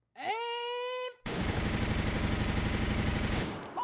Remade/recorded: remade